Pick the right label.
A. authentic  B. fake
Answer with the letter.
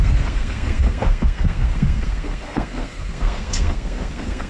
B